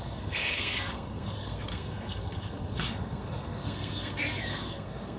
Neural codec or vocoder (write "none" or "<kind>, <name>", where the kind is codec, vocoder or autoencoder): codec, SNAC